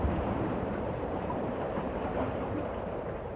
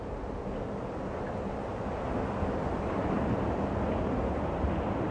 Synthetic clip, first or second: first